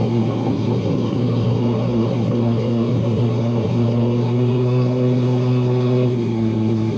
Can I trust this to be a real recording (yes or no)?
no